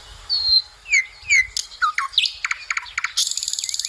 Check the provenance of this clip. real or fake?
real